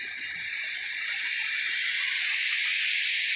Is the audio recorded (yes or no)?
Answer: no